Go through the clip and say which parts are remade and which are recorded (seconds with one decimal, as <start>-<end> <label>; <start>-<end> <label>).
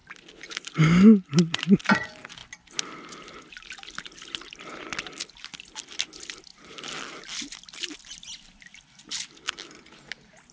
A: 0.0-10.5 recorded